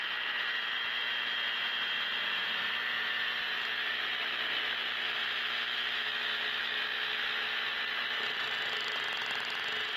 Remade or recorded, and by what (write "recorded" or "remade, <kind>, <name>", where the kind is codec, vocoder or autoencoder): recorded